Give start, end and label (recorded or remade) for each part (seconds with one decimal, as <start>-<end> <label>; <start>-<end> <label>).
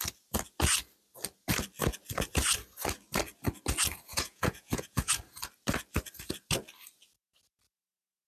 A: 0.0-4.1 recorded; 4.1-5.2 remade; 5.2-8.3 recorded